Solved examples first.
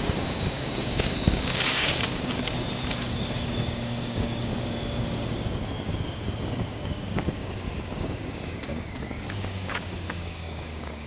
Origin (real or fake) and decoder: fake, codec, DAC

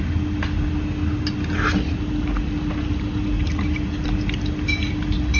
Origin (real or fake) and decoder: real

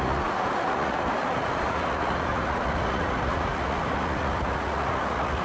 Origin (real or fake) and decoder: fake, vocoder, Vocos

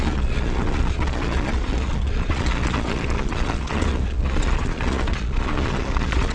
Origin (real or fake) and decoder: fake, vocoder, Vocos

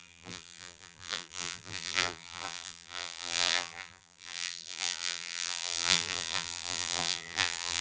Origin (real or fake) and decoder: fake, vocoder, BigVGAN v2